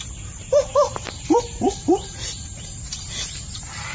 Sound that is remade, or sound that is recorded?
recorded